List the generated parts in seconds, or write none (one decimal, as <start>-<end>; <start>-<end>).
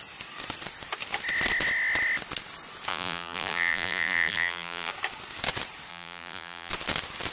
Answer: 2.9-4.9; 5.9-6.7